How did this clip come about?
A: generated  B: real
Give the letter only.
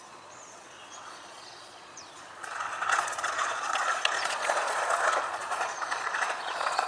A